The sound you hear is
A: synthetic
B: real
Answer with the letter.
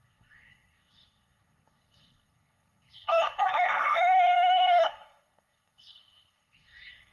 A